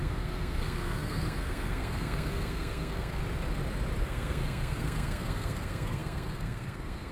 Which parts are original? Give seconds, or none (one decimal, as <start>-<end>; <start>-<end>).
3.2-4.0